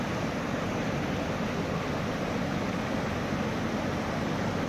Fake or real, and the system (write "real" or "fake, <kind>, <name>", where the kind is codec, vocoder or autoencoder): real